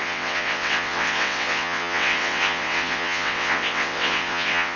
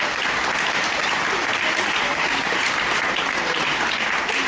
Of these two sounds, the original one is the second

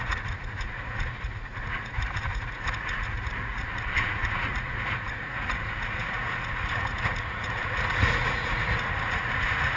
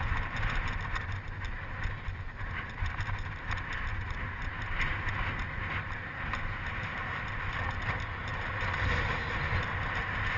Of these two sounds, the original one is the second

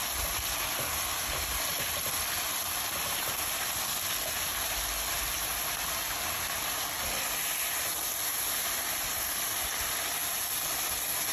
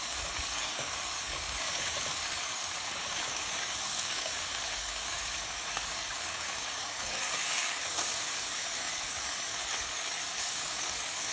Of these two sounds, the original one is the first